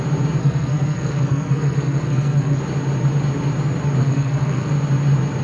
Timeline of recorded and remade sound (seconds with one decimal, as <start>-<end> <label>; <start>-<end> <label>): 0.0-0.4 recorded; 0.4-2.6 remade; 2.6-4.0 recorded; 4.0-4.7 remade; 4.7-5.4 recorded